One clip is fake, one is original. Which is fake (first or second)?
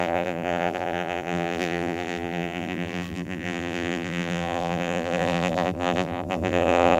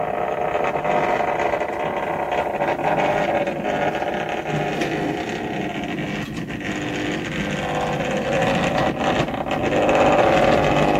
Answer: first